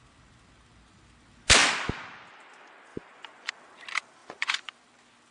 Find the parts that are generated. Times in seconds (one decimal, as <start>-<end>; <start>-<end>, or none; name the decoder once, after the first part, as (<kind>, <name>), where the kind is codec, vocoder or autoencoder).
2.9-3.5 (vocoder, Vocos); 4.2-4.7